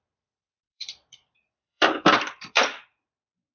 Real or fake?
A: fake